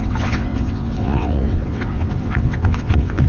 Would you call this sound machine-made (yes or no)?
yes